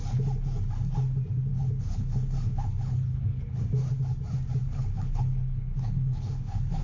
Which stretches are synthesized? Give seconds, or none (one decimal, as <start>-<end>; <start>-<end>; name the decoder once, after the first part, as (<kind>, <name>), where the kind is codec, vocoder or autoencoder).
1.5-3.6 (codec, HILCodec); 4.6-6.8

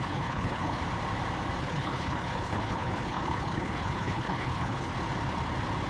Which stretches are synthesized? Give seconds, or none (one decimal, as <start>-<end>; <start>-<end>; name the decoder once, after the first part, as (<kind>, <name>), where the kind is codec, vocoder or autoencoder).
0.0-0.8 (codec, HILCodec); 1.6-4.9

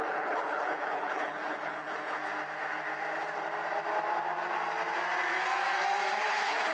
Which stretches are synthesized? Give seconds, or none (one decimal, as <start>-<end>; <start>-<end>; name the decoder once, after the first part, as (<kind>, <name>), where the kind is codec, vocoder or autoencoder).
0.0-2.2 (codec, HILCodec); 6.2-6.7